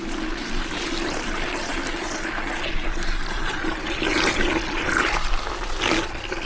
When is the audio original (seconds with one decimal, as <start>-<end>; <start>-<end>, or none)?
0.0-6.5